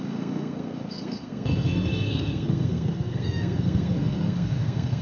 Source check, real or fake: fake